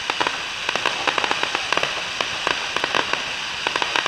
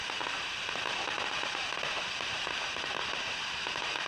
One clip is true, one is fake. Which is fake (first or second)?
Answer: second